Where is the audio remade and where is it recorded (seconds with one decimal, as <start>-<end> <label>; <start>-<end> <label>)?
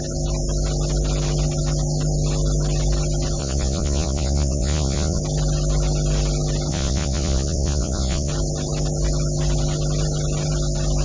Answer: 0.0-3.4 recorded; 3.4-5.2 remade; 5.2-6.7 recorded; 6.7-8.3 remade; 8.3-11.0 recorded